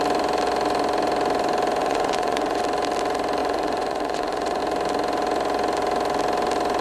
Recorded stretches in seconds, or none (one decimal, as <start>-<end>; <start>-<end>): 0.0-1.8; 2.6-3.4; 4.6-6.8